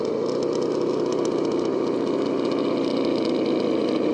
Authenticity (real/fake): real